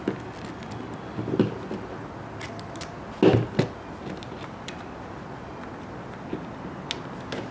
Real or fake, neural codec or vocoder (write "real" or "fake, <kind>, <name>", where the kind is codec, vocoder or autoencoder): real